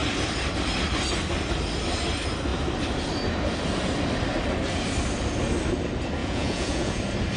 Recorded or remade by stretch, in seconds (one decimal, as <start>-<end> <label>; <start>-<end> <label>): 0.0-6.2 recorded; 6.2-7.0 remade; 7.0-7.4 recorded

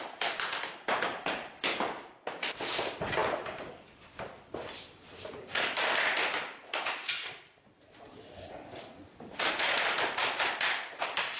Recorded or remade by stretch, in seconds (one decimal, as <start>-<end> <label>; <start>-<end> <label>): 0.0-11.4 recorded

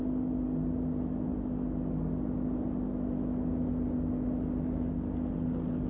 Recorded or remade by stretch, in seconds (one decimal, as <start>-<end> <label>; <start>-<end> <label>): 0.0-5.9 recorded

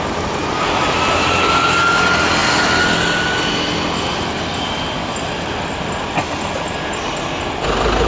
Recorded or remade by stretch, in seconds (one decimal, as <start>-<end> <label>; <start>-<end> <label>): 0.0-8.1 recorded

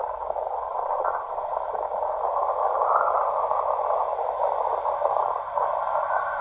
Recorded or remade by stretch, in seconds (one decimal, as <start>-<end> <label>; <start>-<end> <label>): 0.0-0.7 recorded; 0.7-1.5 remade; 1.5-6.4 recorded

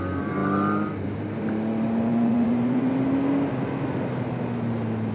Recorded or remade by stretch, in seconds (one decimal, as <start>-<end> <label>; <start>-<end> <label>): 0.0-2.1 recorded; 2.1-2.9 remade; 2.9-5.1 recorded

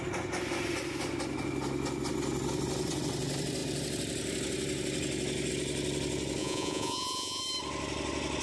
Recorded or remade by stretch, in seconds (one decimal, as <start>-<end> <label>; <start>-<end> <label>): 0.0-6.4 recorded; 6.4-7.4 remade; 7.4-8.4 recorded

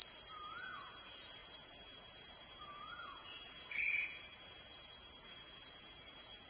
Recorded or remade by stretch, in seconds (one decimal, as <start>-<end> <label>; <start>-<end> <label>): 0.0-0.5 recorded; 0.5-6.5 remade